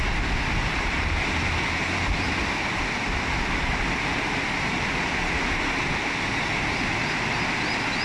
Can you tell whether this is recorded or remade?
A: recorded